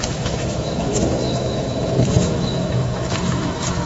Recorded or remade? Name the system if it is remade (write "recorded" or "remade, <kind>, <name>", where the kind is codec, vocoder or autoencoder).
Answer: remade, autoencoder, DAC-VAE